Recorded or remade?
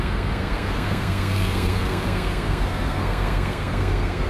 remade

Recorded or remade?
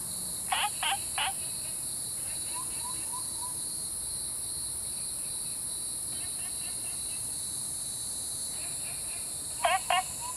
recorded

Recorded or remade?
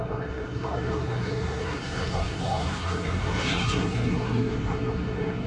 remade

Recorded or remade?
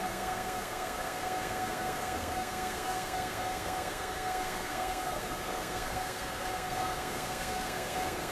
remade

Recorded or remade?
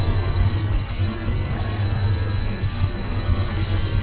remade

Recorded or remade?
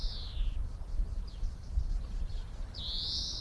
recorded